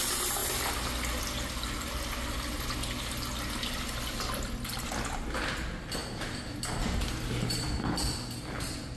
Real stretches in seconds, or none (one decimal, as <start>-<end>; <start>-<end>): 0.0-9.0

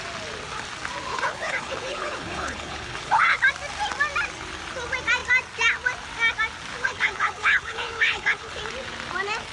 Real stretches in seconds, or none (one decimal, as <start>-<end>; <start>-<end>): 0.0-1.1; 3.2-6.7; 8.6-9.5

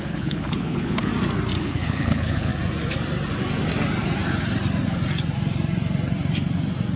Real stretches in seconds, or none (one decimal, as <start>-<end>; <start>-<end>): 1.1-1.6; 2.5-7.0

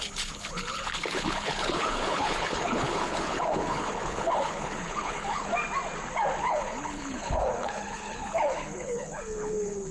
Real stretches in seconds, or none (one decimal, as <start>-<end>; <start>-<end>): 5.5-6.4

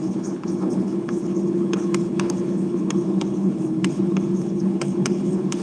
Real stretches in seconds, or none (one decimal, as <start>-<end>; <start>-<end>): none